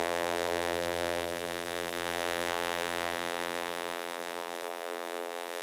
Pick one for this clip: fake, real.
fake